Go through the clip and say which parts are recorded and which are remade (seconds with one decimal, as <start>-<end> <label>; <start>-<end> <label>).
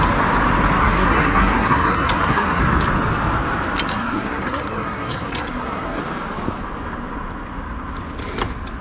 0.0-0.8 recorded; 0.8-2.6 remade; 2.6-3.9 recorded; 3.9-6.0 remade; 6.0-8.8 recorded